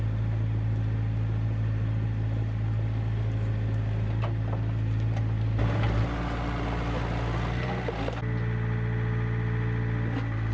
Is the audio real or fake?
real